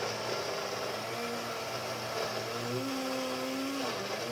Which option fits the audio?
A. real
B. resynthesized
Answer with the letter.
A